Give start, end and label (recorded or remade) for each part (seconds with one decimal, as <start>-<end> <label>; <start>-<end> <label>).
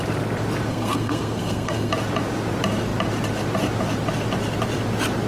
0.0-0.7 recorded; 0.7-1.9 remade; 1.9-5.3 recorded